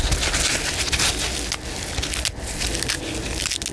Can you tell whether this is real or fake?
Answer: real